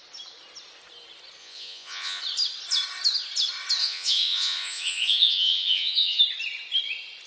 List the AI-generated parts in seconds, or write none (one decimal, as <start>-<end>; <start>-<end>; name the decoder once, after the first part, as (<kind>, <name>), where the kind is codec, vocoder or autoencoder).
1.4-2.2 (vocoder, Vocos); 3.8-6.2